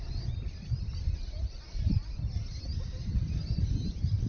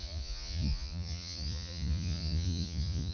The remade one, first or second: second